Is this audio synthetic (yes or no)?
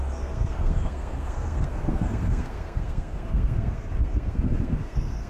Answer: yes